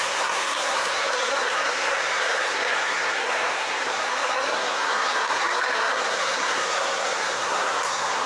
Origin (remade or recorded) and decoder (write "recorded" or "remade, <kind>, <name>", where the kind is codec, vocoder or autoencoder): remade, codec, SNAC